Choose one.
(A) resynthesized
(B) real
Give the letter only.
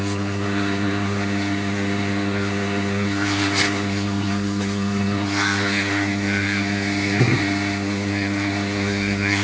A